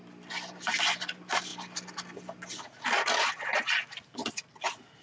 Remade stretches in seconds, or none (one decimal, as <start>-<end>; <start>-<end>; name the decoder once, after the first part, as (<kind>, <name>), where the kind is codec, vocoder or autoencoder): none